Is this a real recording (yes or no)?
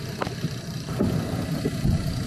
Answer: yes